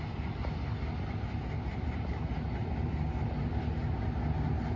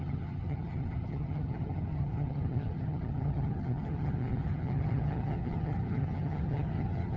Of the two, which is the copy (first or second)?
second